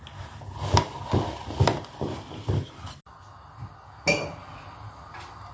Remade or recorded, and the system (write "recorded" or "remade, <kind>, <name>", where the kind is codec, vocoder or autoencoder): recorded